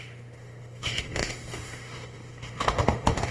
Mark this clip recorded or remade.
remade